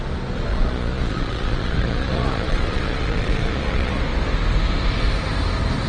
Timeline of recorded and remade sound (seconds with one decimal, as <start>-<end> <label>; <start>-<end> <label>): 0.0-0.5 recorded; 0.5-4.0 remade; 4.0-5.9 recorded